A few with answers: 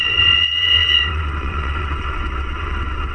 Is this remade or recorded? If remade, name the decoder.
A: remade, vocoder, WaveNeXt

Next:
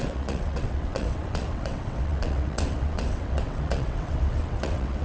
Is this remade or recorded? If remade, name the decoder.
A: remade, vocoder, WaveNeXt